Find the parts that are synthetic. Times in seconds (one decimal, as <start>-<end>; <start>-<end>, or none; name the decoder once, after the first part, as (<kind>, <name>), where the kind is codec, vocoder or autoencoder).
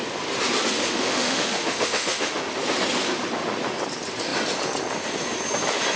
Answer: 0.8-2.4 (autoencoder, DAC-VAE)